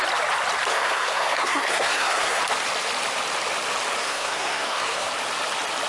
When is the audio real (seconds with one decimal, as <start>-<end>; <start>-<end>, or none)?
0.0-0.7; 2.4-4.0; 5.1-5.9